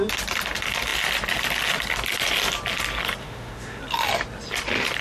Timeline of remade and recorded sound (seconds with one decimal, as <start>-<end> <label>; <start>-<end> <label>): 0.0-3.2 recorded; 3.2-3.8 remade; 3.8-5.0 recorded